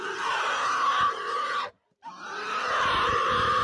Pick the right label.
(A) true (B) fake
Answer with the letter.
A